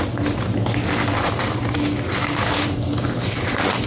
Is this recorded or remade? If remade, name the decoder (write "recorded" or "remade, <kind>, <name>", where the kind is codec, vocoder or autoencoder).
recorded